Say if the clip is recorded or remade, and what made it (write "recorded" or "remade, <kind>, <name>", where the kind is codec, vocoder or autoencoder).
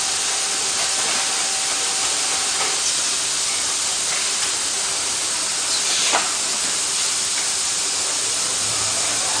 recorded